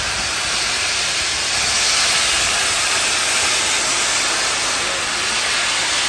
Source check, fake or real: real